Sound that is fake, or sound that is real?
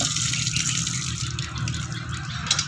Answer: real